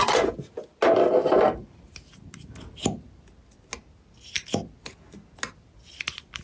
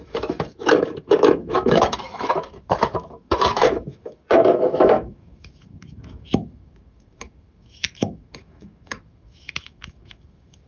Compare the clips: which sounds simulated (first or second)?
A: second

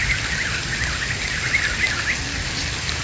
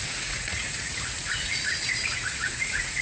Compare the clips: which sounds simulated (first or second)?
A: second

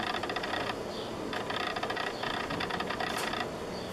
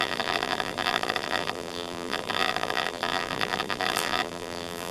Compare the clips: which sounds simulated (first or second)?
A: second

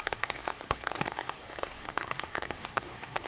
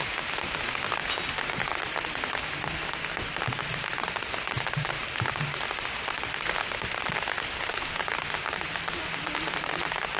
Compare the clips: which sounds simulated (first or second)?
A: first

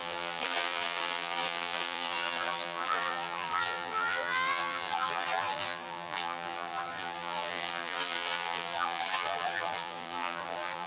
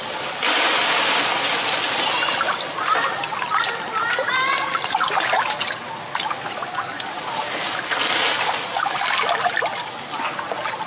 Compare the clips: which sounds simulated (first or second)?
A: first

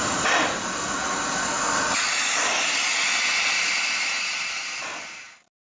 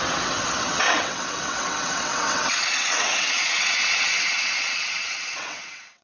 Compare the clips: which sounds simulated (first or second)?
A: second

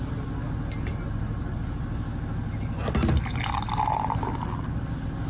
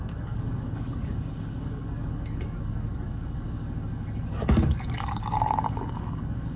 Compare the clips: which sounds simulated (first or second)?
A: second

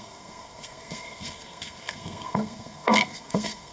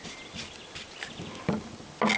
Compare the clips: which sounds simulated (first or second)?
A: first